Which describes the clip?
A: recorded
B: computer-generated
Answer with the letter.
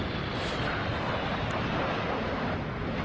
A